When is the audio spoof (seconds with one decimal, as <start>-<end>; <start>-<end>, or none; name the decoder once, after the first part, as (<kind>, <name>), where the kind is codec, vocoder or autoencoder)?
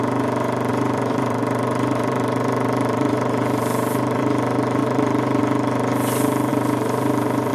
0.7-4.2 (vocoder, BigVGAN v2); 4.8-5.4; 6.5-7.5